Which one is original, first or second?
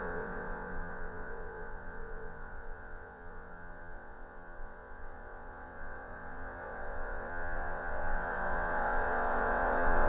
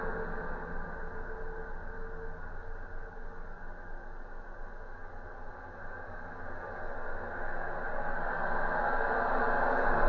second